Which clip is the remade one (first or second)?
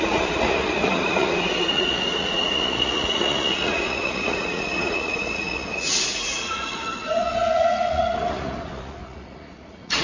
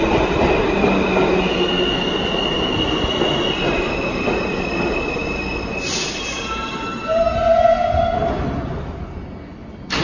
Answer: first